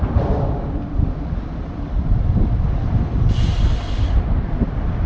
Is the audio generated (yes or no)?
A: yes